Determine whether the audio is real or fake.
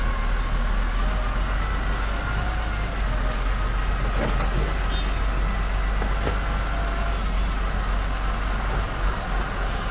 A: real